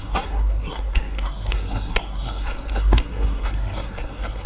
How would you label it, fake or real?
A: fake